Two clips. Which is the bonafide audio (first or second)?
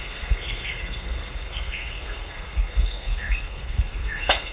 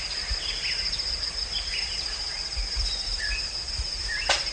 second